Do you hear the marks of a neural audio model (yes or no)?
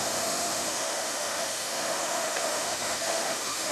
yes